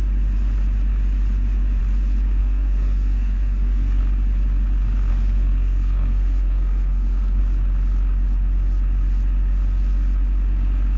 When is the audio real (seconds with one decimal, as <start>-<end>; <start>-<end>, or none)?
0.0-2.4; 4.0-5.1; 7.4-11.0